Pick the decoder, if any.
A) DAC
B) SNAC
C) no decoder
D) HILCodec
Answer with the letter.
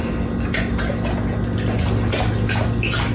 C